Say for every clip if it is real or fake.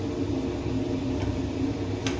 real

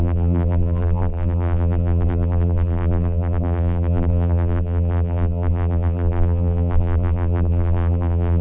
fake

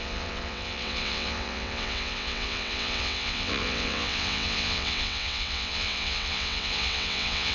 fake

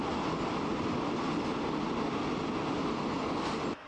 real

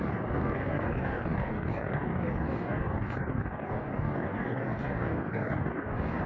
fake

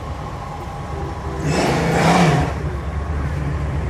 real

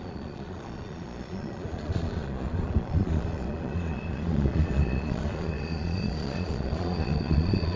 fake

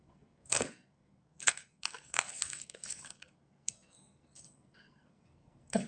fake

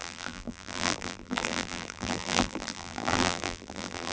fake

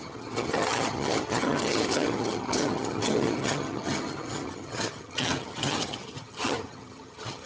fake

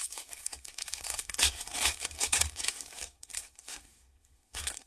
fake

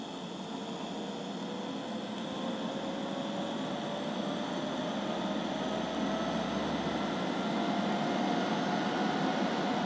real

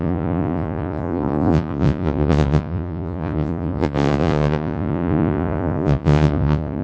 fake